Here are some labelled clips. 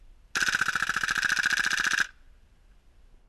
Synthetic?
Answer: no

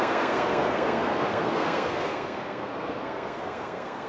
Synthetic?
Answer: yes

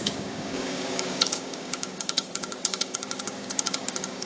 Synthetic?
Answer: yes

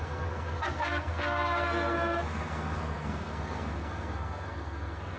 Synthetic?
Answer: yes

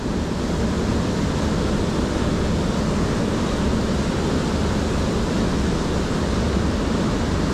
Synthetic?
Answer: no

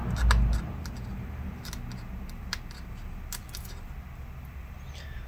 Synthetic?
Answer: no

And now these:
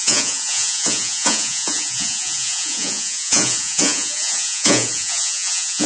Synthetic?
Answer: yes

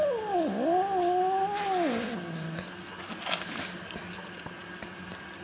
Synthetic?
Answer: no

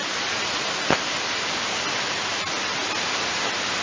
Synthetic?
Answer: no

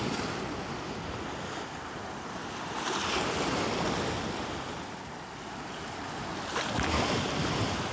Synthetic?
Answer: no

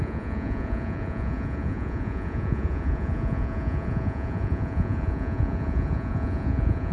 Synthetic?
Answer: yes